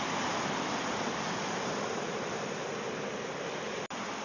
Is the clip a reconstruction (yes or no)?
no